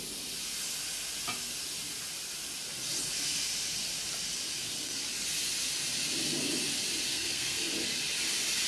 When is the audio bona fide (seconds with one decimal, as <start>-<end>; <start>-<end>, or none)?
0.0-7.1; 7.7-8.7